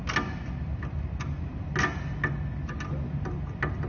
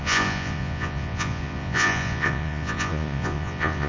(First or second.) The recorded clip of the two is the first